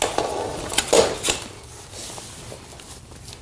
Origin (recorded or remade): recorded